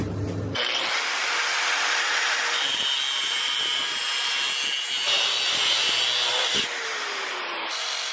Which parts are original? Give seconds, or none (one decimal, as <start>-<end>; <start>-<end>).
0.0-8.1